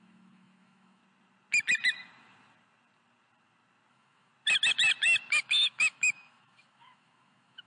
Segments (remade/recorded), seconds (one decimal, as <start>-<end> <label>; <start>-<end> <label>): 0.0-1.0 remade; 1.0-3.9 recorded; 3.9-4.3 remade; 4.3-5.3 recorded; 5.3-7.7 remade